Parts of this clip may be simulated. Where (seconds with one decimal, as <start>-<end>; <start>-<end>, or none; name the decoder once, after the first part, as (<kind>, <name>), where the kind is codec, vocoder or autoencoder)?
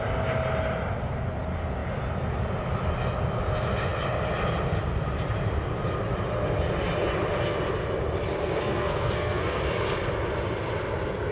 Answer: 8.4-9.6 (codec, SNAC)